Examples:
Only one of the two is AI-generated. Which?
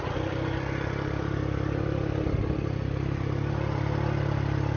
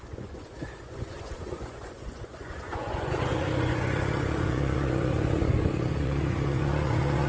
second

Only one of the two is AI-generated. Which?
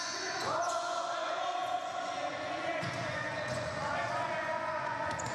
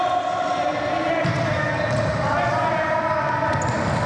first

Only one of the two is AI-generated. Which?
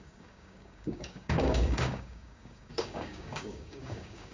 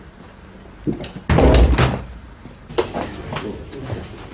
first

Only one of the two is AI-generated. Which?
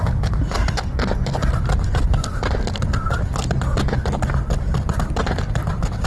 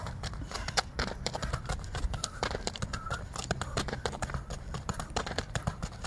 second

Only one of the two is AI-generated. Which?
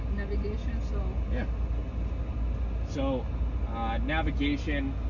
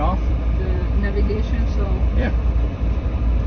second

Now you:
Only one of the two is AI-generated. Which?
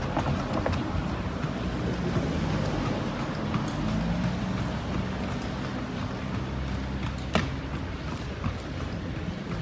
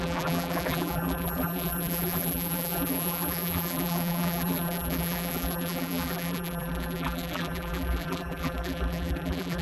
second